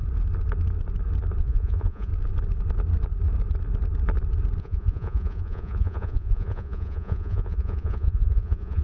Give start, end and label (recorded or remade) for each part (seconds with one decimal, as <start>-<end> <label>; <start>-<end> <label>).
0.0-1.4 recorded; 1.4-2.1 remade; 2.1-4.6 recorded; 4.6-8.8 remade